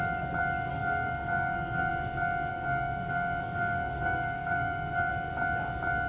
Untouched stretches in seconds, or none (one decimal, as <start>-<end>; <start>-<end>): 0.0-0.7; 1.9-2.5; 5.1-6.1